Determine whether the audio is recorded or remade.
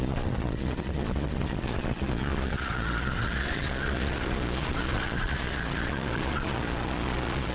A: remade